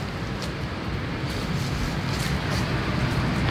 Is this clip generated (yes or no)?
no